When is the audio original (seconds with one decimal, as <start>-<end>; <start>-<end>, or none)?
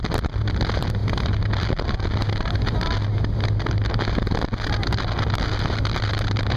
0.0-6.6